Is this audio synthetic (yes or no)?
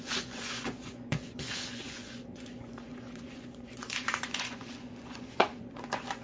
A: yes